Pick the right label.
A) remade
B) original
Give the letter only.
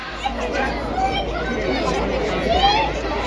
B